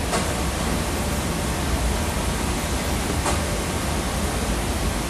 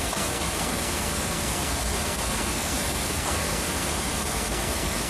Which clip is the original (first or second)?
first